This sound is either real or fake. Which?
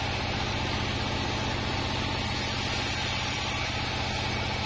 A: real